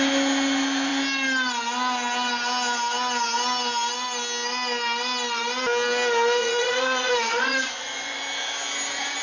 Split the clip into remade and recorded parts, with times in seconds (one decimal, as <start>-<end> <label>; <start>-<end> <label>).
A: 0.0-6.4 recorded; 6.4-8.2 remade; 8.2-9.2 recorded